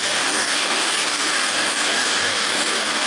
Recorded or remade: remade